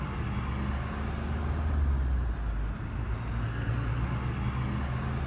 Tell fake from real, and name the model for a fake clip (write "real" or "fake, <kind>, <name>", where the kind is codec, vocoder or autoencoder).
real